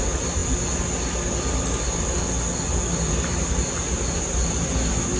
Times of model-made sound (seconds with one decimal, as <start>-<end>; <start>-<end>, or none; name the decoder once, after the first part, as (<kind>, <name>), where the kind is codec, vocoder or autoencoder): none